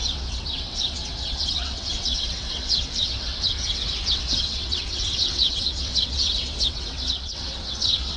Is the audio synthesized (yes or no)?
yes